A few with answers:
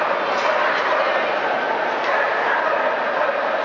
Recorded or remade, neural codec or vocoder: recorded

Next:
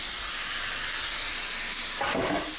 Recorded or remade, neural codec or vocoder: recorded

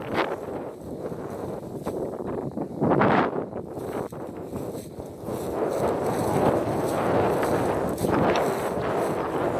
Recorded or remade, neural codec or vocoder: recorded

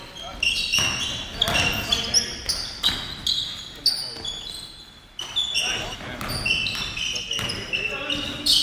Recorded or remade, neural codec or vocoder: recorded